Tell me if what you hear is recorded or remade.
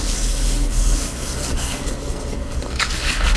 remade